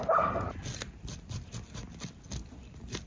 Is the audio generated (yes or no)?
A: no